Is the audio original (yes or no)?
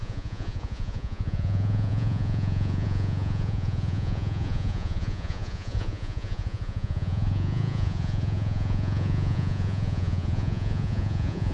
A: no